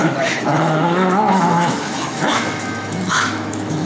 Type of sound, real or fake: fake